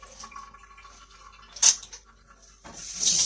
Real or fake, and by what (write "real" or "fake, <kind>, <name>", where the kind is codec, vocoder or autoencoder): real